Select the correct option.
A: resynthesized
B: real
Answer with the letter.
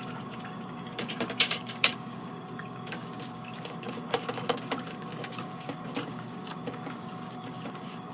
A